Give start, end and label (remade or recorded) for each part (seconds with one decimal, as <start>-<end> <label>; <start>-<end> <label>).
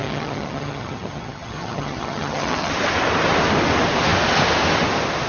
0.0-2.7 remade; 2.7-5.3 recorded